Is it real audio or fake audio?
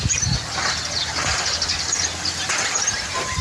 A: real